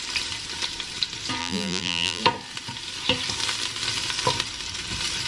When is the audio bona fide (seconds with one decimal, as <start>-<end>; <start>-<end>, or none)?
0.0-1.4; 2.2-5.3